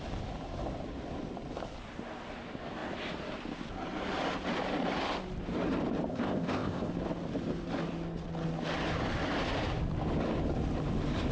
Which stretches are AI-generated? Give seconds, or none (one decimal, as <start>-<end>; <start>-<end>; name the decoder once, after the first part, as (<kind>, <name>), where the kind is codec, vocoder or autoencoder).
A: 6.1-6.9 (codec, ZipCodec)